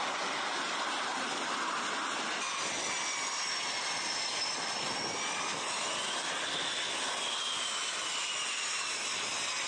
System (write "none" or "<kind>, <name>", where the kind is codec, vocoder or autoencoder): none